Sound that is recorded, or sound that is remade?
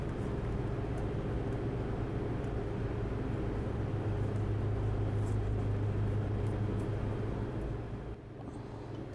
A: recorded